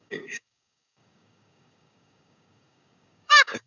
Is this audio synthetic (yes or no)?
yes